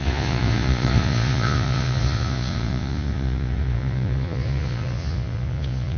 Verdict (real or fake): fake